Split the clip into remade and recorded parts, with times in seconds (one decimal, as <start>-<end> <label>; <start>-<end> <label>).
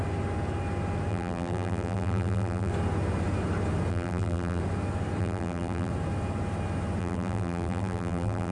0.0-1.1 recorded; 1.1-2.7 remade; 2.7-3.9 recorded; 3.9-4.6 remade; 4.6-5.2 recorded; 5.2-5.9 remade; 5.9-7.0 recorded; 7.0-8.5 remade